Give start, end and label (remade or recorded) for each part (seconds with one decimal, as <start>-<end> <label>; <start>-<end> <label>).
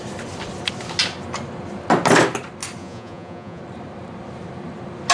0.0-2.8 recorded; 2.8-3.6 remade; 3.6-5.1 recorded